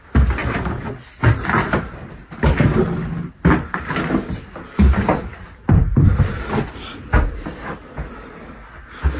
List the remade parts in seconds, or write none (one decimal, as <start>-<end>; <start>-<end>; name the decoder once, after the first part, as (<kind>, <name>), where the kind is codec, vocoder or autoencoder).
0.4-0.9 (vocoder, BigVGAN v2); 2.2-2.9